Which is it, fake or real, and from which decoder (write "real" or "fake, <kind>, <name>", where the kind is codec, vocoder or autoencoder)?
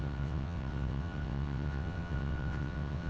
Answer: fake, vocoder, WaveNeXt